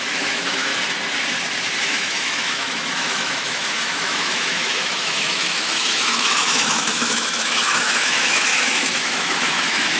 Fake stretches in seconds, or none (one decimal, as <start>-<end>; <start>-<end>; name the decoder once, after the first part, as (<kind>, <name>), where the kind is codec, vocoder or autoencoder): 0.0-0.7 (autoencoder, DAC-VAE); 1.8-10.0